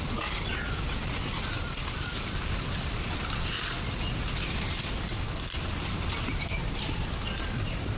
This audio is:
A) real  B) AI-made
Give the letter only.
A